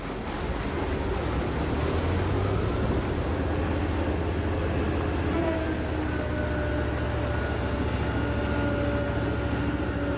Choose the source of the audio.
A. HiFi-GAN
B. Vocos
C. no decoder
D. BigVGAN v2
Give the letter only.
C